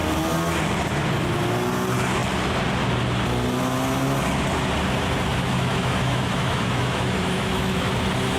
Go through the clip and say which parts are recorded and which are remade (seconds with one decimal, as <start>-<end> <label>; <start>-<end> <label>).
0.0-5.3 recorded; 5.3-7.9 remade; 7.9-8.4 recorded